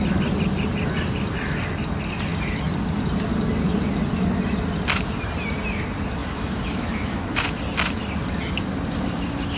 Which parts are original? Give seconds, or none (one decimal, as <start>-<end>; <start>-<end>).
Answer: 0.0-6.2; 7.6-9.6